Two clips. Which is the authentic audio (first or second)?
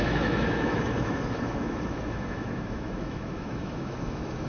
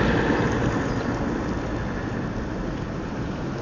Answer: second